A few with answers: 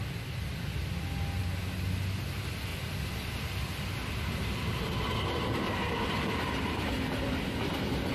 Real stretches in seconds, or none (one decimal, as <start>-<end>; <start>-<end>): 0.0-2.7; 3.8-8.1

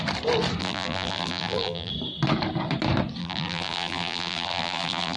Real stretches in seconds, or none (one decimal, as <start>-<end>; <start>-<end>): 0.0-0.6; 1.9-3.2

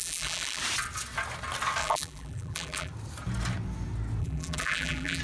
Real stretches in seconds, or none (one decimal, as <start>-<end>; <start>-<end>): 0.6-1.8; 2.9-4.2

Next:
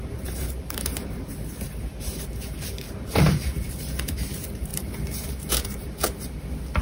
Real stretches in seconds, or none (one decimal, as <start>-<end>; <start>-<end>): 6.0-6.8

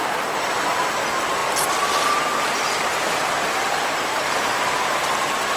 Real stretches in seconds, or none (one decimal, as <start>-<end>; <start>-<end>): 0.8-1.4; 4.8-5.6

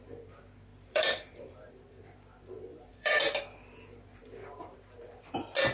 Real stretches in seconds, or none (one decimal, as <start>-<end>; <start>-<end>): 0.0-0.7; 1.7-2.7; 3.2-5.7

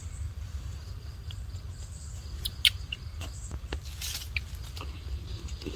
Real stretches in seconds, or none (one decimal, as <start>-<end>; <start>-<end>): 0.0-5.8

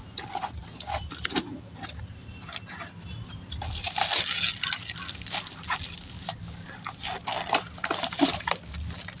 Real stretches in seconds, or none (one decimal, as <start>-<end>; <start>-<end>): 0.0-0.6; 2.0-9.2